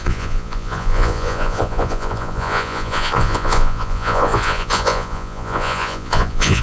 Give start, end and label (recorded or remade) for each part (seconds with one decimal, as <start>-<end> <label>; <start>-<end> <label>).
0.0-6.6 remade